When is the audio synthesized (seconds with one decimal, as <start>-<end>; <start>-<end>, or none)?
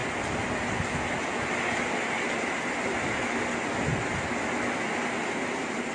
2.3-3.9